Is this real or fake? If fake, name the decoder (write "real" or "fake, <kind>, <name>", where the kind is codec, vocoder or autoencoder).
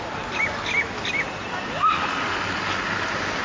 real